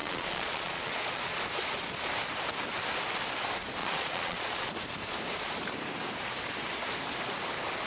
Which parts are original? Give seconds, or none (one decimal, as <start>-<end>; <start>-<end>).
1.4-3.8; 4.7-7.9